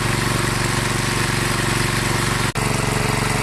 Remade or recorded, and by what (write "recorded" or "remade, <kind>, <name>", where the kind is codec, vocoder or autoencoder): recorded